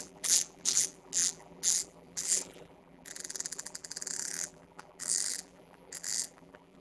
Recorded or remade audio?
remade